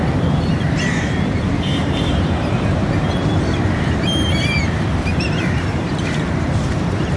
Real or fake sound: fake